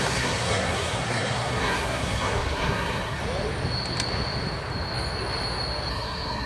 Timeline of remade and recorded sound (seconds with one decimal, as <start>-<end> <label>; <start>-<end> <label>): 0.0-3.2 remade; 3.2-5.9 recorded; 5.9-6.5 remade